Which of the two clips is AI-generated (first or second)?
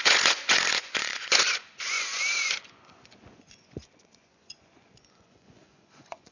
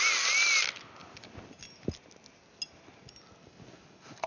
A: first